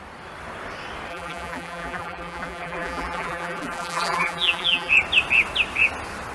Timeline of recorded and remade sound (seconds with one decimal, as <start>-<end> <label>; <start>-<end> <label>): 0.0-1.1 recorded; 1.1-4.9 remade; 4.9-6.3 recorded